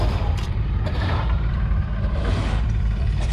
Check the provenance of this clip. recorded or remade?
remade